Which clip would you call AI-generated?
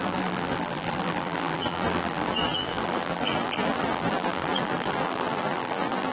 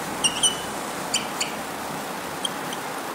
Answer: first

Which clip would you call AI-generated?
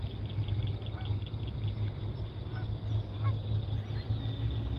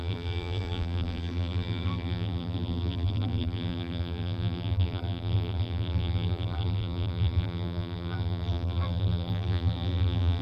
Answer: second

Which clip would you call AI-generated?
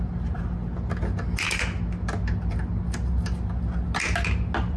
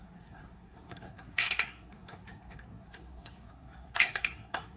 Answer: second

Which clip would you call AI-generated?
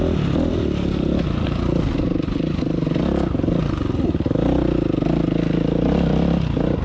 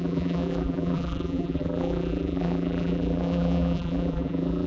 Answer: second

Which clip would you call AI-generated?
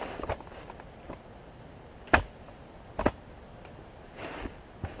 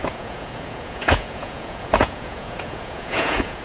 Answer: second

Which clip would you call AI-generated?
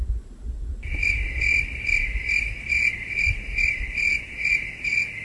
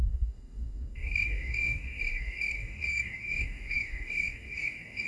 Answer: second